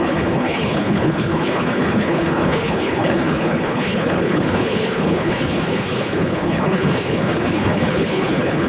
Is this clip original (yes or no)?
no